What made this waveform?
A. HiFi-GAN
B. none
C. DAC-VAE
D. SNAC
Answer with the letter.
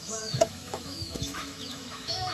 C